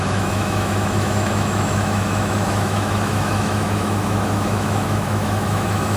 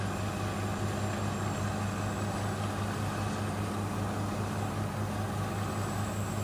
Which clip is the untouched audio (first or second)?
second